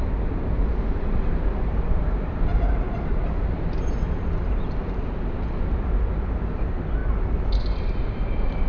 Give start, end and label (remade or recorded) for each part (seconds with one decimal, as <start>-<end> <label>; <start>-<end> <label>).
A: 0.0-8.7 recorded